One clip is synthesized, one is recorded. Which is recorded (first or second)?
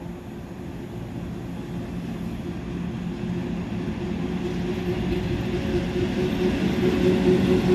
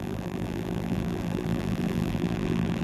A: first